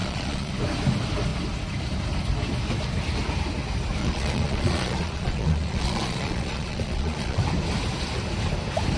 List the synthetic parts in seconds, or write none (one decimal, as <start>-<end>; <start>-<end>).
0.0-0.5; 4.0-7.4